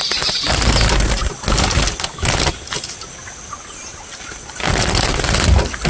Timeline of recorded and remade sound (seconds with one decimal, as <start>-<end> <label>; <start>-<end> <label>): 0.0-5.9 recorded